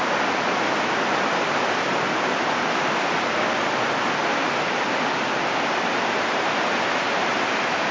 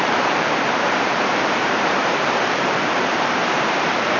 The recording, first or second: first